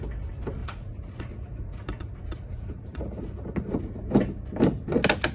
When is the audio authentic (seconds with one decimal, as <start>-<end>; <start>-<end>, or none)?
0.0-0.6; 3.8-5.3